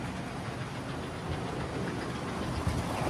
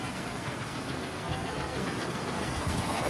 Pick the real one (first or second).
first